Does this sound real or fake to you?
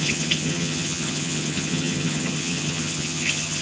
fake